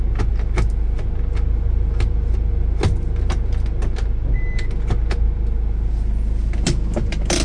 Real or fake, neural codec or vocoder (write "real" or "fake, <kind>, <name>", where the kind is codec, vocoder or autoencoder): real